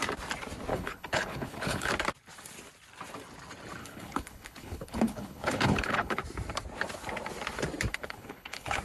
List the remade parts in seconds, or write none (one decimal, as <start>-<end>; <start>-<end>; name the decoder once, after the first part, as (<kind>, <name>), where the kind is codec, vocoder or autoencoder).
0.7-1.9 (codec, HILCodec); 3.8-6.2; 7.9-8.8